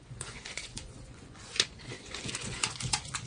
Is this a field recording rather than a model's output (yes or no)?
no